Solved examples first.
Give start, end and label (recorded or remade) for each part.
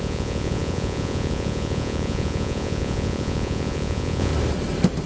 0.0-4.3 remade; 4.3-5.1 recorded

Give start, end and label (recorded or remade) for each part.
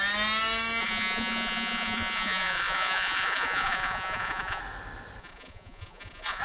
0.0-0.8 recorded; 0.8-4.6 remade; 4.6-5.2 recorded; 5.2-6.4 remade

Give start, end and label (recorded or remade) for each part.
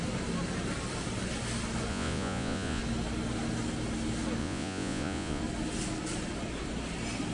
0.0-1.9 recorded; 1.9-2.8 remade; 2.8-4.4 recorded; 4.4-5.4 remade; 5.4-7.3 recorded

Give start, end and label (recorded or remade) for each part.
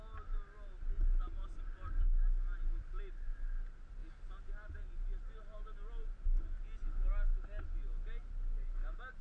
0.0-9.2 recorded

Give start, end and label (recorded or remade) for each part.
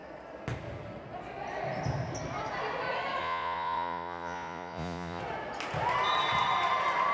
0.0-3.2 recorded; 3.2-5.2 remade; 5.2-7.1 recorded